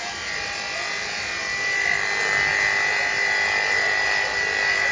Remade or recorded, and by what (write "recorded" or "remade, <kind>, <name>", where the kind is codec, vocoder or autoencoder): recorded